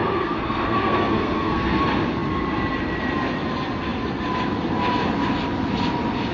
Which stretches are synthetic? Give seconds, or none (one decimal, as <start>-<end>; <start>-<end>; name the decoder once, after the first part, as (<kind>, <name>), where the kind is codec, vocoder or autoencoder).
0.0-1.8 (codec, SNAC)